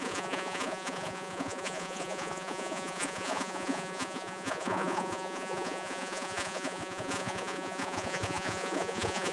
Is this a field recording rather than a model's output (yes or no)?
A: no